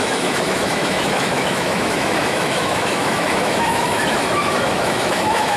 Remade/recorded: remade